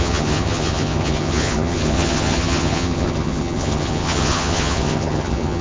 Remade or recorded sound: remade